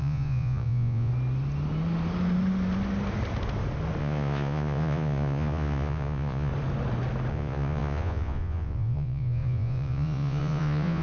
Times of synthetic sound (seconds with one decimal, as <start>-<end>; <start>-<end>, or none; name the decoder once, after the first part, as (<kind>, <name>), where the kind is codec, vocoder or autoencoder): 0.0-1.1 (vocoder, Vocos); 4.0-6.5; 7.3-11.0